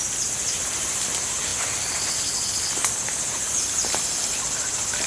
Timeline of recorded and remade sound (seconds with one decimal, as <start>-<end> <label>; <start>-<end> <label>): 0.0-5.1 recorded